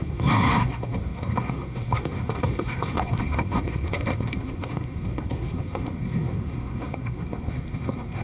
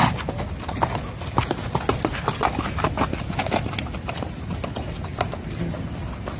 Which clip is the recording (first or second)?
second